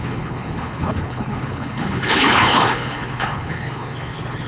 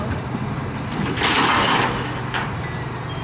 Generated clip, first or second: first